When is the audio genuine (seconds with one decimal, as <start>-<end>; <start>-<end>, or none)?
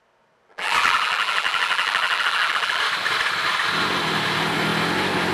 0.0-0.5; 2.8-5.3